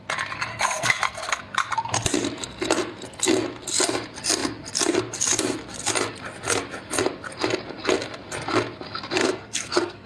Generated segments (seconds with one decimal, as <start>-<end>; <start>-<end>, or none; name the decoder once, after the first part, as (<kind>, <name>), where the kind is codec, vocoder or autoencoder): 0.5-1.4 (codec, SNAC); 9.2-10.1